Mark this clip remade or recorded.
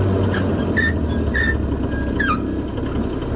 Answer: recorded